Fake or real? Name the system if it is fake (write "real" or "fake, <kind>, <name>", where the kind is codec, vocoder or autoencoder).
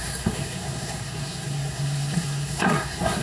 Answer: fake, codec, SNAC